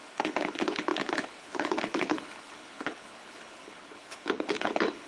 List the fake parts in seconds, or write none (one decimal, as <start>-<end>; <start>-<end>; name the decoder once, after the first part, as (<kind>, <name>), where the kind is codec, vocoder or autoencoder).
0.0-5.1 (codec, HILCodec)